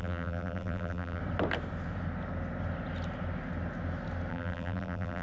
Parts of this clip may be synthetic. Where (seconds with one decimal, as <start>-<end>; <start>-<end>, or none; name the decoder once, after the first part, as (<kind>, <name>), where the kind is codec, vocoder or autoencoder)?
0.0-1.2 (vocoder, BigVGAN v2); 4.3-5.2